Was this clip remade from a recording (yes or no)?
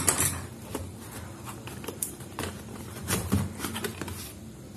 yes